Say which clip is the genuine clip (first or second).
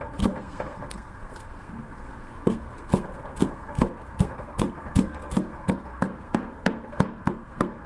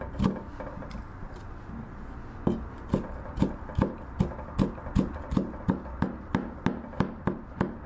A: second